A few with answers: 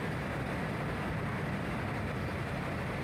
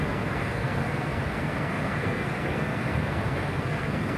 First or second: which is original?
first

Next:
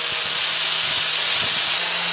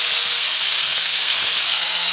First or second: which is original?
first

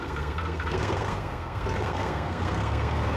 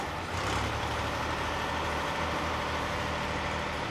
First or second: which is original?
second